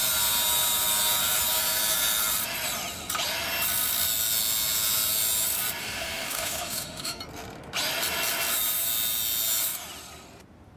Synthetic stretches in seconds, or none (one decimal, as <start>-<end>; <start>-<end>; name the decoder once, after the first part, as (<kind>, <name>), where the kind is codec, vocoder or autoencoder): 5.8-7.2 (autoencoder, DAC-VAE)